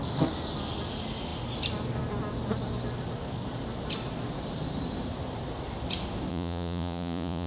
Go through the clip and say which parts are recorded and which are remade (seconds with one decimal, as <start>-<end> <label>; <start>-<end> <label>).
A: 0.0-6.3 recorded; 6.3-7.5 remade